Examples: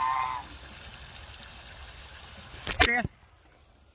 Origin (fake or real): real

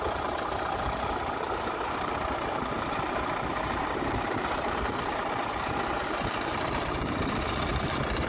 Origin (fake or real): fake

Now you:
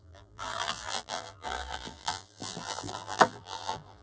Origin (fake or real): fake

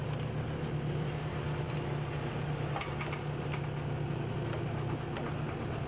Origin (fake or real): real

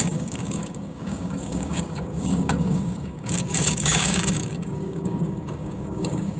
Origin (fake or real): fake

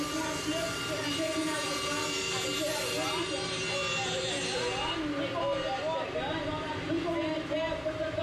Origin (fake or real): real